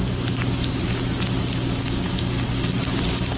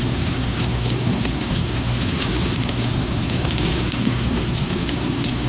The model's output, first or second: second